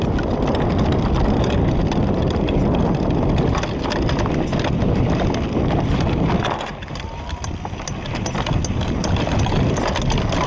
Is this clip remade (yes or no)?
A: no